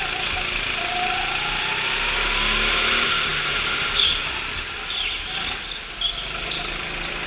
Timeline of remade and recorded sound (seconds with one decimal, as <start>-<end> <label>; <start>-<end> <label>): 0.0-7.3 recorded